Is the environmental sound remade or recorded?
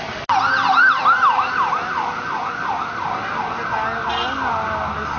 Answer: recorded